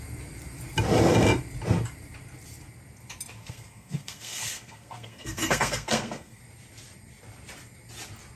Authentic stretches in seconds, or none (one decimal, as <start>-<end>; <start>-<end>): 0.0-3.4; 6.4-8.4

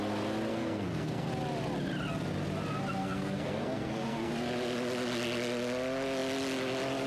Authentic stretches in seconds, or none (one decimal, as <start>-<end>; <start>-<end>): 0.0-0.5; 1.3-3.0; 4.3-7.1